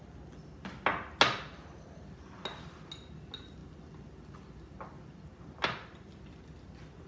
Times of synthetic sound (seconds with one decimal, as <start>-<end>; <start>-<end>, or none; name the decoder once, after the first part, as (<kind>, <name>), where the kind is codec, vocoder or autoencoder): none